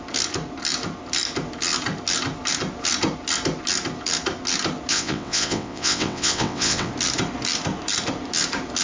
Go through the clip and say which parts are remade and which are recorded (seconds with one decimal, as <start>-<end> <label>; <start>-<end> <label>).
0.0-4.9 recorded; 4.9-6.9 remade; 6.9-8.8 recorded